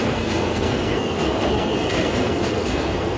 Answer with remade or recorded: remade